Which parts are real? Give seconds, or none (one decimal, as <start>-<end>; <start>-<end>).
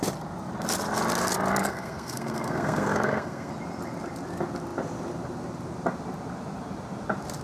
0.0-1.6; 3.5-7.4